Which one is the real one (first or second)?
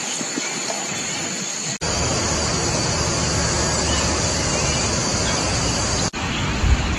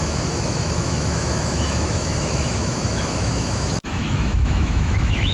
first